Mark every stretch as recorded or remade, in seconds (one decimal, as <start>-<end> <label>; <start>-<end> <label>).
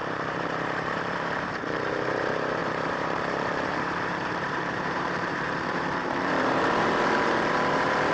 0.0-8.1 remade